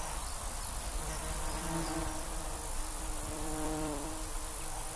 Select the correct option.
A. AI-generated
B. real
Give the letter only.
A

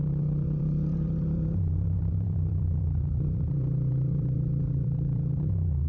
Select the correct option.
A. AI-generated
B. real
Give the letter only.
A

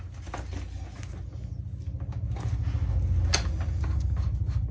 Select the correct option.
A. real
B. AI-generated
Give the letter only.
A